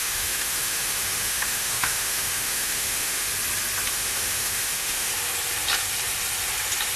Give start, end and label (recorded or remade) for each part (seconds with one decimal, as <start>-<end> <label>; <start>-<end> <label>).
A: 0.0-3.3 remade; 3.3-3.9 recorded; 3.9-5.1 remade; 5.1-7.0 recorded